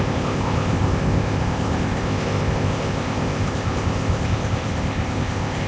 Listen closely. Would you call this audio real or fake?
fake